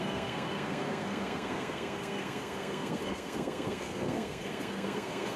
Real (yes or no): no